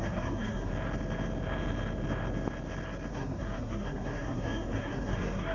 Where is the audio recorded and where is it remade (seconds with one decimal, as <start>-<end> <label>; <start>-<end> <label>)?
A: 0.0-0.7 remade; 0.7-3.1 recorded; 3.1-5.5 remade